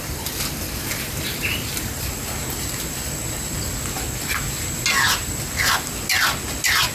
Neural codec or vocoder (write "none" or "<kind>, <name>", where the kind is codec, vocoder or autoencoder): none